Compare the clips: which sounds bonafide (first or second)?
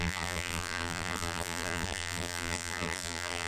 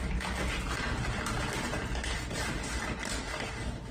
second